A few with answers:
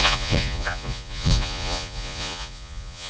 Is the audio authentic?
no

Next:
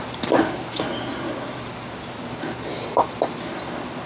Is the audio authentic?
yes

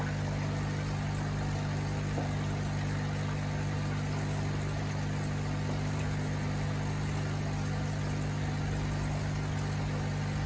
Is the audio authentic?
yes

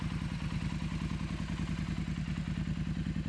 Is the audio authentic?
yes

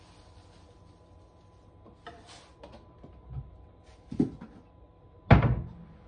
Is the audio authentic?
yes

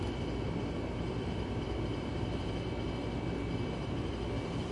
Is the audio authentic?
no